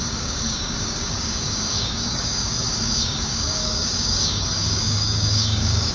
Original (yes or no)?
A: no